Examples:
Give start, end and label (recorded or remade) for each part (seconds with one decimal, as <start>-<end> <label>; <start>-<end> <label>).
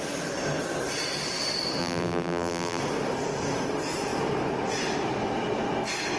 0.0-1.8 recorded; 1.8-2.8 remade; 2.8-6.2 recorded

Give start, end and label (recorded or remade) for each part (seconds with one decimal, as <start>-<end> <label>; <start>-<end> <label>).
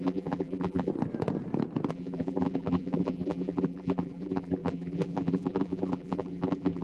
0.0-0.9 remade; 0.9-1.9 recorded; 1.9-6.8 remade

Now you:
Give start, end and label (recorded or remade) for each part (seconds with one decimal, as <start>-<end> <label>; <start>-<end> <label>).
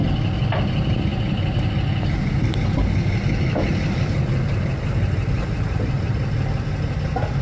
0.0-7.4 recorded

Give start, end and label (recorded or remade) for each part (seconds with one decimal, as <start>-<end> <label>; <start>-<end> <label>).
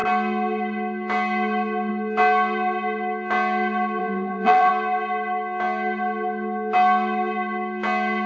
0.0-4.0 recorded; 4.0-4.7 remade; 4.7-8.3 recorded